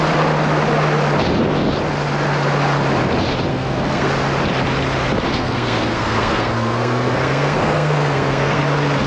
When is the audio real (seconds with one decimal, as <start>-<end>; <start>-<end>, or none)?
0.0-3.5; 4.1-5.3; 8.6-9.1